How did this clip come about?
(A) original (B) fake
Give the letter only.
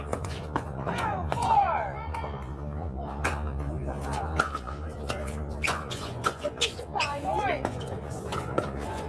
B